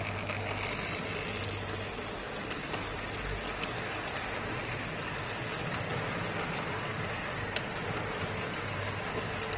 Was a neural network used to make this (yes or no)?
no